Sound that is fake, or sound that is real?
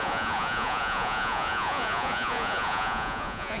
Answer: fake